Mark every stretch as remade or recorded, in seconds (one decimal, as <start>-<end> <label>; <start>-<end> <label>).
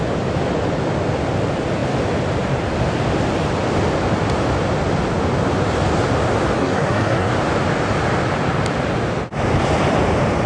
0.0-6.6 recorded; 6.6-7.3 remade; 7.3-10.5 recorded